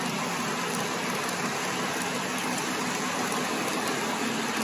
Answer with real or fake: real